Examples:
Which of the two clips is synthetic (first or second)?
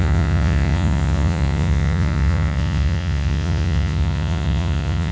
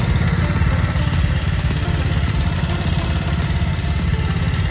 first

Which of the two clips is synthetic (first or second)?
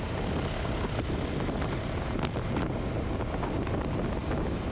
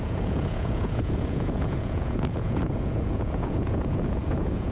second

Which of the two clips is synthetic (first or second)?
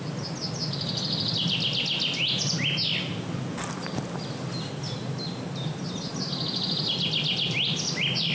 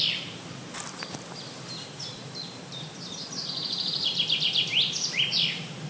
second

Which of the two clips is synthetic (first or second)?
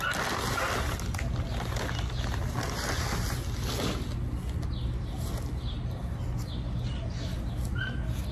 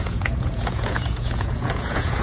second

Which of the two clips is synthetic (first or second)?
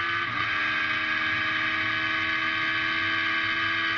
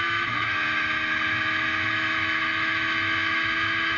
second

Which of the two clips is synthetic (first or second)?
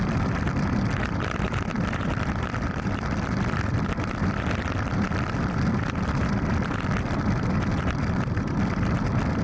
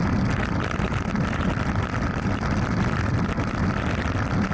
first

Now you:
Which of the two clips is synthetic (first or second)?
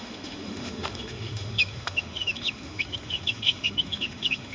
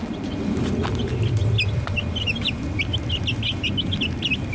first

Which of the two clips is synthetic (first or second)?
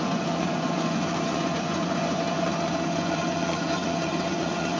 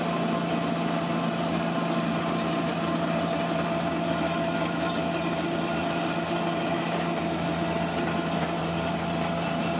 first